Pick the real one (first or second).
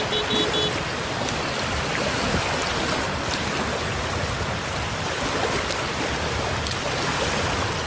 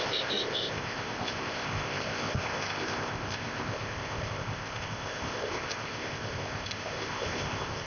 first